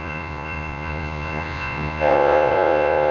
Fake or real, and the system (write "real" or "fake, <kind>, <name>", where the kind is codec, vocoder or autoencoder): fake, vocoder, Vocos